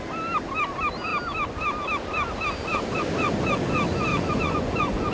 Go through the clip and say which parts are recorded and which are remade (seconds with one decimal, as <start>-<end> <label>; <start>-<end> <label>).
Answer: 0.0-4.1 recorded; 4.1-5.1 remade